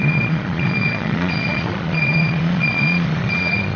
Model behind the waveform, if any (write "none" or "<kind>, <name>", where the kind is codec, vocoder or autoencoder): vocoder, Vocos